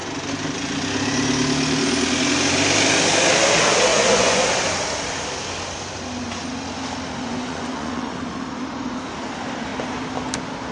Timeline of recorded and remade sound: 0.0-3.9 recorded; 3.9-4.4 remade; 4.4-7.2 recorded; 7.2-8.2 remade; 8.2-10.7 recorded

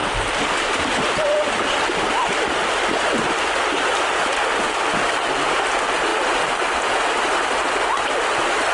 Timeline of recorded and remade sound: 0.0-8.7 recorded

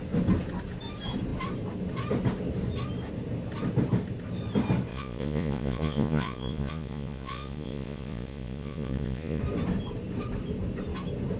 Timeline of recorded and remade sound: 0.0-4.9 recorded; 4.9-9.4 remade; 9.4-11.4 recorded